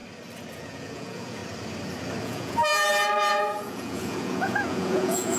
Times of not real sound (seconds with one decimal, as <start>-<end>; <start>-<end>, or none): 0.5-1.4; 2.2-2.7; 3.3-5.4